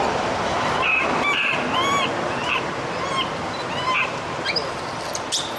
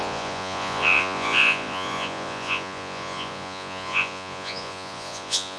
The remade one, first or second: second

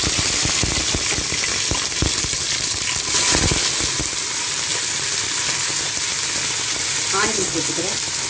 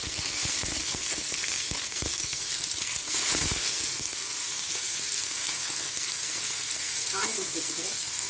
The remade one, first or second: second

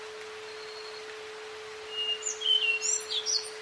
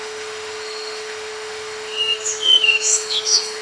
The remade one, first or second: second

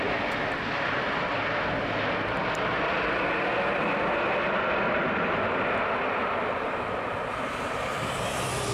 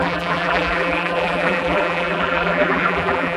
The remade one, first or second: second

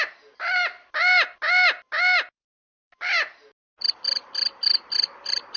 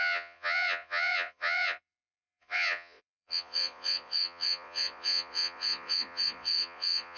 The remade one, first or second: second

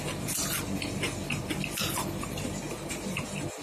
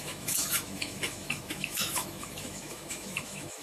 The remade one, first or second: second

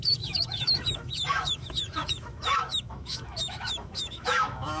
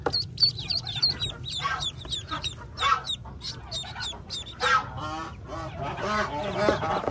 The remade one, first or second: first